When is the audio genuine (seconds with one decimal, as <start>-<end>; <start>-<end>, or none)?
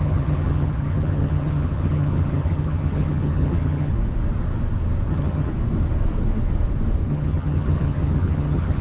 3.9-5.1; 5.5-7.1